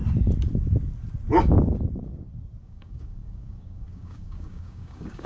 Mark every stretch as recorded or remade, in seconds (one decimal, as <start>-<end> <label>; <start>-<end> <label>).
0.0-2.6 recorded; 2.6-5.3 remade